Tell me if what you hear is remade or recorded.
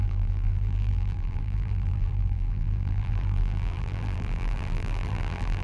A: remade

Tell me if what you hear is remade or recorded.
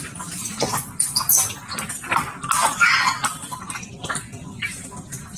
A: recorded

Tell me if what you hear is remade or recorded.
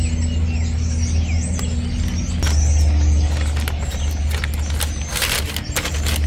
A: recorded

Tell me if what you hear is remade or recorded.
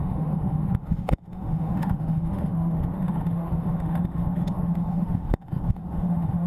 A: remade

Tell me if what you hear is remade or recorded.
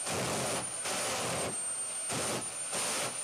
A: recorded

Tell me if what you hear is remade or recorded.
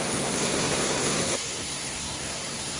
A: remade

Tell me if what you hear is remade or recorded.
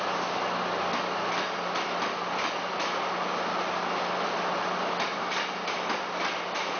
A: recorded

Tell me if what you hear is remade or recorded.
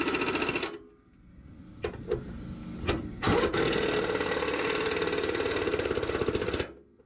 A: recorded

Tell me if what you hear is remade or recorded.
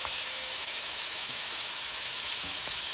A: remade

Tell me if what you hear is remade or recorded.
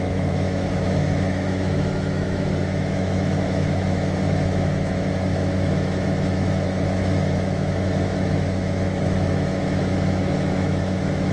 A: remade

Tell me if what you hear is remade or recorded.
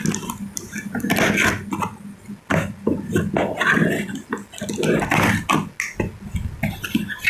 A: recorded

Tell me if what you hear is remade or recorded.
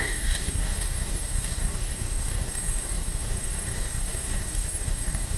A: remade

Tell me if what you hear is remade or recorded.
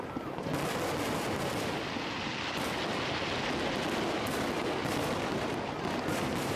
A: recorded